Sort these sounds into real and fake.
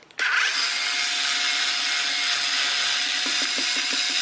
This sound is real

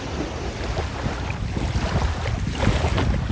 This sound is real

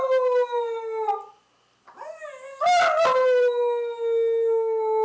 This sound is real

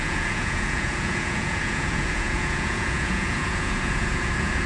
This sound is fake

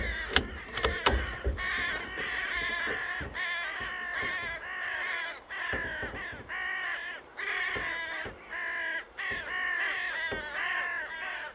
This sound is fake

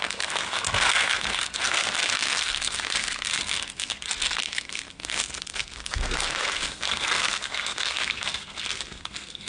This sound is fake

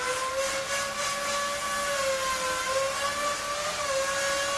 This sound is real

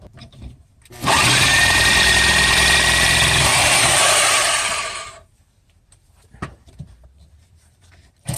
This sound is fake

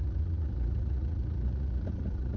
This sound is fake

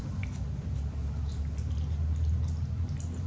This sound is real